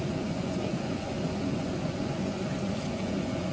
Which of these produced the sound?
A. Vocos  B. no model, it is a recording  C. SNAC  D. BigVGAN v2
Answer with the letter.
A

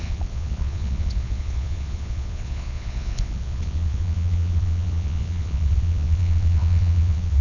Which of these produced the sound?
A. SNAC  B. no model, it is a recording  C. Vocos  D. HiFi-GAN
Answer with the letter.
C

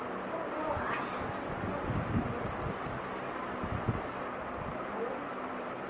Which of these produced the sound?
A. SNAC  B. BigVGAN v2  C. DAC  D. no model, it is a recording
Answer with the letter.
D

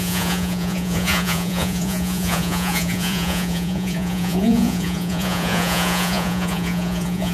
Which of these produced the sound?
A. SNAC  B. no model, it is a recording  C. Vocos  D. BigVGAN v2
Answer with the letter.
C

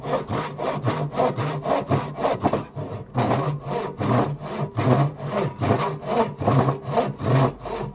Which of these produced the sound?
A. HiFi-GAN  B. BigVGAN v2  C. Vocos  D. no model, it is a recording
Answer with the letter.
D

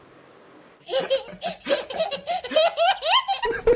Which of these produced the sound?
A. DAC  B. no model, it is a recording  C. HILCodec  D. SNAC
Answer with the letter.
B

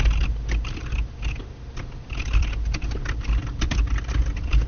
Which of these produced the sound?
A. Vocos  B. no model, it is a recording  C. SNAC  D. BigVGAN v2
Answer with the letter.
D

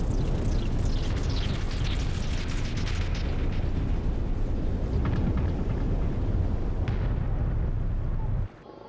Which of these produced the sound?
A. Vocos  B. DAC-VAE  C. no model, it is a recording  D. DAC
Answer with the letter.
C